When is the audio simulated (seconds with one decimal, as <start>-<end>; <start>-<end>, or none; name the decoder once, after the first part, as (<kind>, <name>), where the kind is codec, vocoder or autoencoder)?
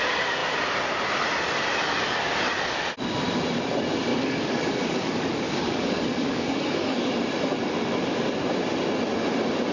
4.1-7.1 (codec, DAC)